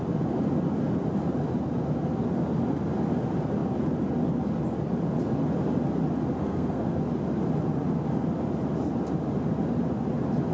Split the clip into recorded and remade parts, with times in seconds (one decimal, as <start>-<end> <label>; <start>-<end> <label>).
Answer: 0.0-6.4 recorded; 6.4-7.0 remade; 7.0-10.5 recorded